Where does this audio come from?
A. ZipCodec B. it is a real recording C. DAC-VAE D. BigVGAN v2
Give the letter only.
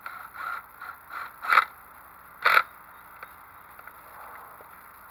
B